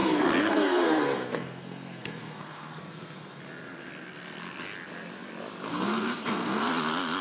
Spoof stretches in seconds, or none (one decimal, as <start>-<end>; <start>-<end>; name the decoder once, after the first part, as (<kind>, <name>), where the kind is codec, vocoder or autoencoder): 0.0-3.4 (codec, SNAC); 5.7-6.7